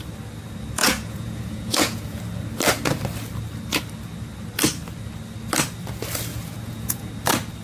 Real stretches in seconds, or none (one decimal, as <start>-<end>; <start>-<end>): 0.0-0.8; 2.2-6.3; 7.1-7.6

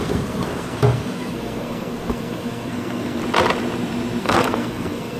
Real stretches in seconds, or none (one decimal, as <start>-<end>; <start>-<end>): 3.2-4.2

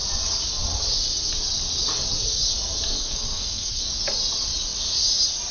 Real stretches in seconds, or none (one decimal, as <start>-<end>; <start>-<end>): 0.0-2.9; 3.9-5.5

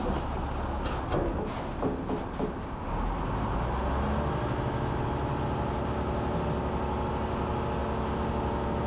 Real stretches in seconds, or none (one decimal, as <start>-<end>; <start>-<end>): 0.0-8.9

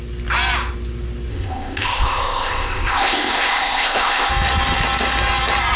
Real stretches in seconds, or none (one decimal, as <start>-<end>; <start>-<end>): 0.0-1.3; 4.3-5.8

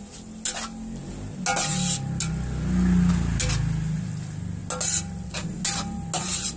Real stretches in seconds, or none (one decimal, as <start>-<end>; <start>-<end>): 0.0-6.6